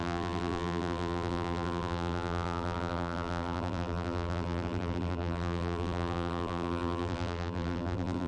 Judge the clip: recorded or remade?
remade